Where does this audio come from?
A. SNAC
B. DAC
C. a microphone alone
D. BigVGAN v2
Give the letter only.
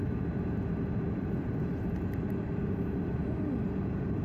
D